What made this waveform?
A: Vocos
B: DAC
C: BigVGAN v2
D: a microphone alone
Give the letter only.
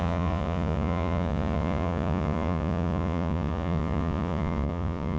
A